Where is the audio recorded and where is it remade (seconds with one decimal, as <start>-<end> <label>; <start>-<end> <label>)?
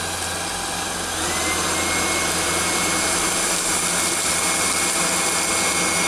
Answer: 0.0-6.1 recorded